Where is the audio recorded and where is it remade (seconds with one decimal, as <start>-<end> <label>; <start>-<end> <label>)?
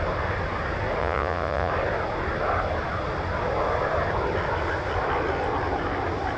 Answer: 0.0-1.0 recorded; 1.0-1.7 remade; 1.7-6.4 recorded